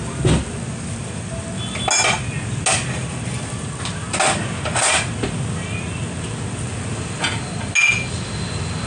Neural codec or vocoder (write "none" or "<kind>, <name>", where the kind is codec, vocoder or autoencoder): none